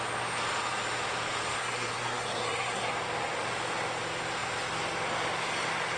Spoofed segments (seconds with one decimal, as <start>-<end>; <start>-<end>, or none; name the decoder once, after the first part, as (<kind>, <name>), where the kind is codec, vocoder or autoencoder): 1.6-2.9 (codec, SNAC)